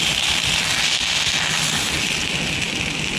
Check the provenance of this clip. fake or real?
real